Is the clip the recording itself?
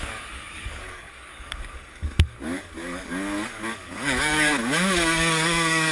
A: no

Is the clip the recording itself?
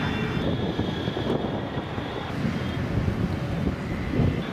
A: yes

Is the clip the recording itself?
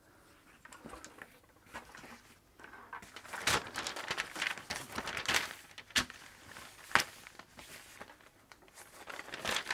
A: yes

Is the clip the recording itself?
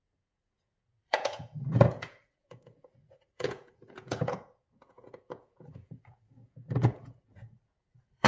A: no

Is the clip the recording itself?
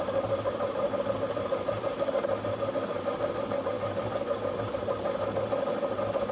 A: yes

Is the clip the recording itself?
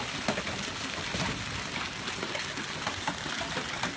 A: yes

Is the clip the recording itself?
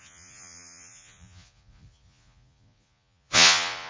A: no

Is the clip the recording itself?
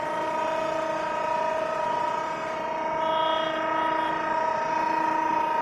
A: yes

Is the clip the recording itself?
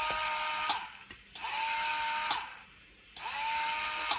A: yes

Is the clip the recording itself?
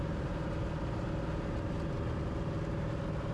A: yes